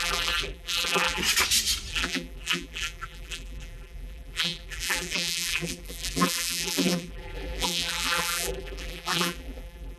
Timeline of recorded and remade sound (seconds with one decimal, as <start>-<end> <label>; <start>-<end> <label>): 0.0-1.2 remade; 1.2-1.9 recorded; 1.9-10.0 remade